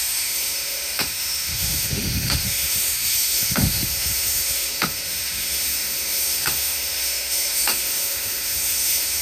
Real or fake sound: fake